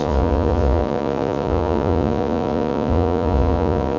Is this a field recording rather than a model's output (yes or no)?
no